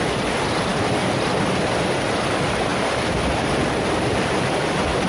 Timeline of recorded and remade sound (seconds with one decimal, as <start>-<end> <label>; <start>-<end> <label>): 0.0-5.1 recorded